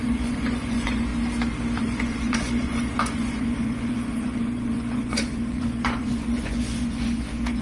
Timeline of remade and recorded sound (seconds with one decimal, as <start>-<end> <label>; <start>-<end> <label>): 0.0-1.1 remade; 1.1-1.8 recorded; 1.8-7.6 remade